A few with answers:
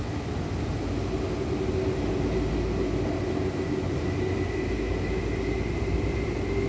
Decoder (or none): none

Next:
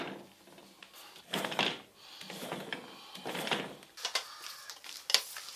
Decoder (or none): none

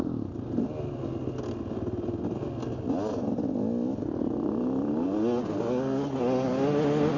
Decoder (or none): none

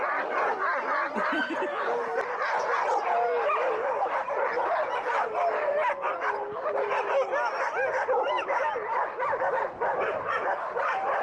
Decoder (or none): none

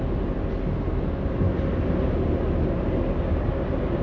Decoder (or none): none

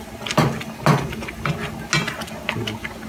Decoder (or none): none